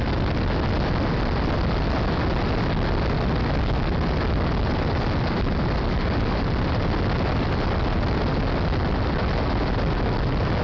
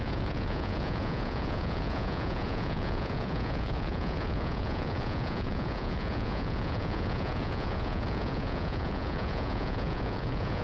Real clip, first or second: first